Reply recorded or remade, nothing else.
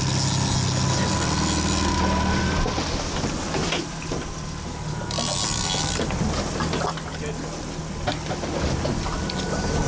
recorded